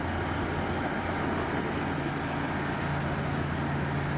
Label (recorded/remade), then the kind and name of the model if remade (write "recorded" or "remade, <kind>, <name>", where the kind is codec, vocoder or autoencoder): recorded